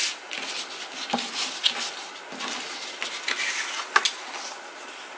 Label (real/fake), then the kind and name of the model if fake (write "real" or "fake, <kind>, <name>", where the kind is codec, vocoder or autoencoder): real